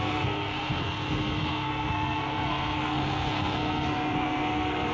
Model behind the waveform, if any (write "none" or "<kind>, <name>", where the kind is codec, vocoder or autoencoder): codec, SNAC